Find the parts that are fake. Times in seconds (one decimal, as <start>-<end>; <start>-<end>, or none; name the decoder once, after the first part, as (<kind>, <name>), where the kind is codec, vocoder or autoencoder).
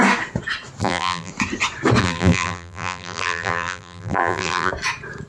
0.8-1.3 (vocoder, BigVGAN v2); 2.0-4.7